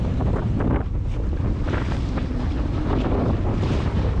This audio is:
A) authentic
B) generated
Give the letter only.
A